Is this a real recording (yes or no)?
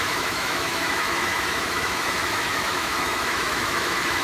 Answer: no